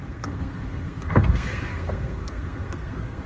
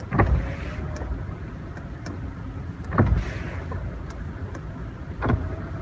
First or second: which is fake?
first